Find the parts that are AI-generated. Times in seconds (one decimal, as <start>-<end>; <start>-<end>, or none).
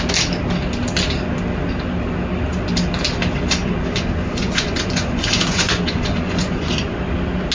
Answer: 3.6-6.9